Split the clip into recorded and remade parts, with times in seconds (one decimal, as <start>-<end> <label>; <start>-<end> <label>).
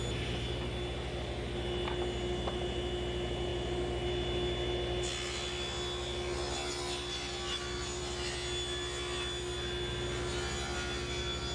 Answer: 0.0-11.5 recorded